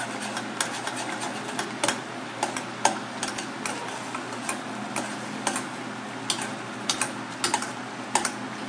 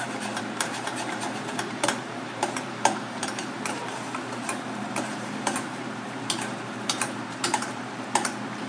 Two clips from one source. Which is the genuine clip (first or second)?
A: first